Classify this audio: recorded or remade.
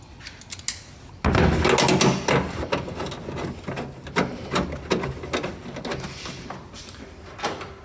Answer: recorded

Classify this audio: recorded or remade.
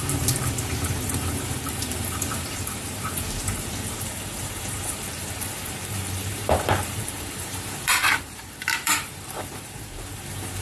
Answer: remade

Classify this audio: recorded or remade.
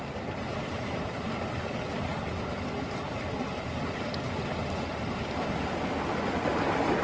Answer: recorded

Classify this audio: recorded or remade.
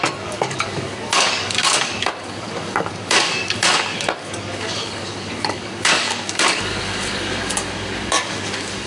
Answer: remade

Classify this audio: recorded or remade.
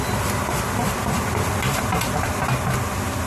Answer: recorded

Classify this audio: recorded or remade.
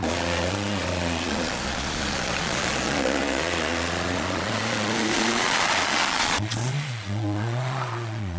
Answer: remade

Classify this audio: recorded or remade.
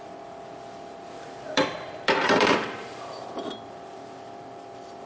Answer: remade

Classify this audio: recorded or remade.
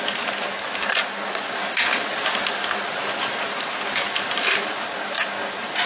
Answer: recorded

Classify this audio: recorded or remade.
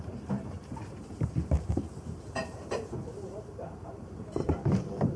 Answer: remade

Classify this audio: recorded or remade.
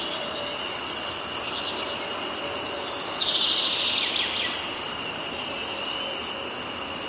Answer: recorded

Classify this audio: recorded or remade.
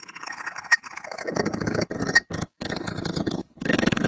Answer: remade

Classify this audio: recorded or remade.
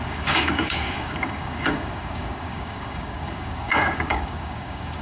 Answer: remade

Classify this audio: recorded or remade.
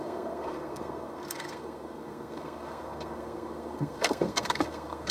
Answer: remade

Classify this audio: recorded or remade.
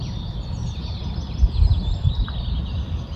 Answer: recorded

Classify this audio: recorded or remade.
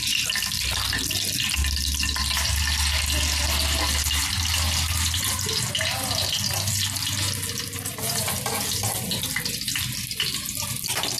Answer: recorded